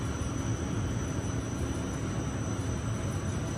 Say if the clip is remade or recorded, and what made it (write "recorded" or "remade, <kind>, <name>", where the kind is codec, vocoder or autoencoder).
recorded